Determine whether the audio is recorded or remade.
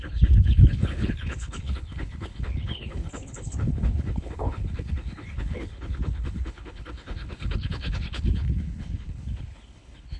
remade